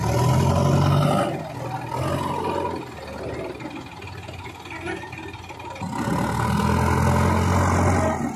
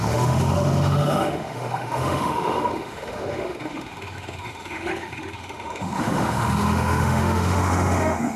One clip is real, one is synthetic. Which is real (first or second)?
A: first